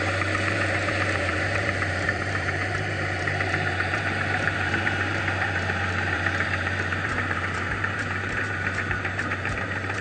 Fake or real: fake